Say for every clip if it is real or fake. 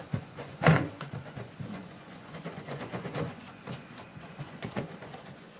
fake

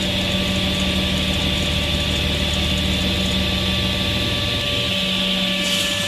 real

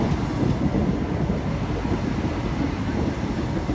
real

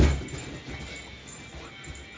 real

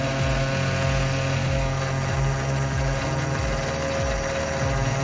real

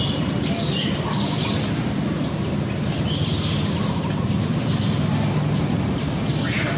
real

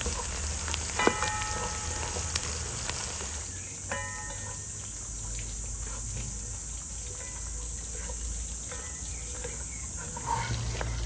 real